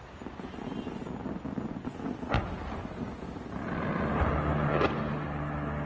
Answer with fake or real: real